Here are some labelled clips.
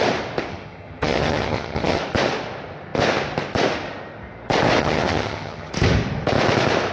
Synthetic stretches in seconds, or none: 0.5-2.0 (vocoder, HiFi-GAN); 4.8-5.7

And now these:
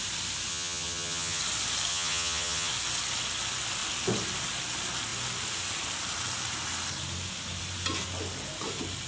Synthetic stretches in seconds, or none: 0.5-1.4 (vocoder, HiFi-GAN); 1.9-2.7

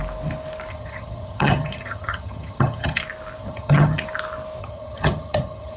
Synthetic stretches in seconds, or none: 0.7-3.0 (vocoder, HiFi-GAN); 3.4-4.0; 4.6-5.8

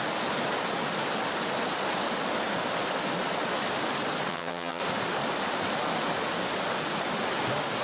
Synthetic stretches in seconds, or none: 4.3-4.8 (vocoder, HiFi-GAN)

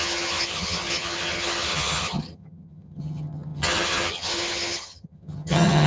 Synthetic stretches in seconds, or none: 0.0-5.9 (vocoder, HiFi-GAN)

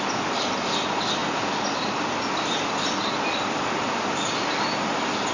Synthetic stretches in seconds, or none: none